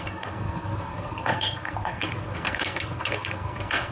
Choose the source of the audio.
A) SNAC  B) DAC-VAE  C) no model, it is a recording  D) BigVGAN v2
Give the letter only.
A